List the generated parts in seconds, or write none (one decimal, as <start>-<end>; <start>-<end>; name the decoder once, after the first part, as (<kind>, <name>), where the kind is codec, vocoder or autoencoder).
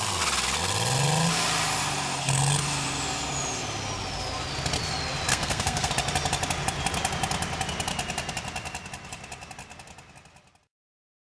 5.3-5.9 (codec, SNAC)